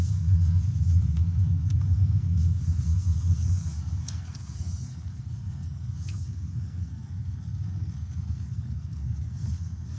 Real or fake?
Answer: fake